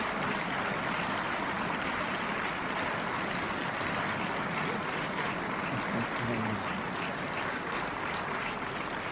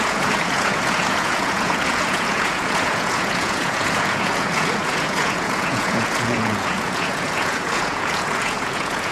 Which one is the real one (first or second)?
first